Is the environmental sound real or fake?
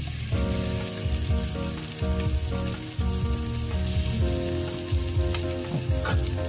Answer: real